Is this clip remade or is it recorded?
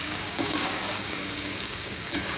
remade